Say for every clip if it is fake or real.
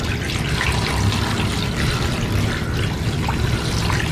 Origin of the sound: real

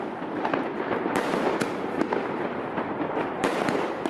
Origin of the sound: fake